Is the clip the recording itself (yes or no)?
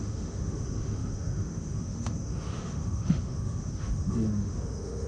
no